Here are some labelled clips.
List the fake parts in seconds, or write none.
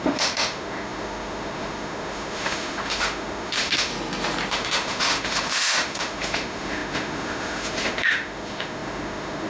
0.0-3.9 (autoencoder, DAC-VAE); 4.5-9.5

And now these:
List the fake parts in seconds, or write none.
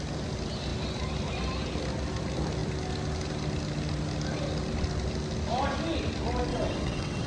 6.5-7.3 (vocoder, WaveNeXt)